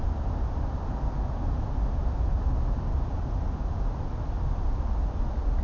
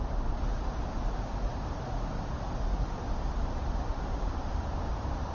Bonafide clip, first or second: first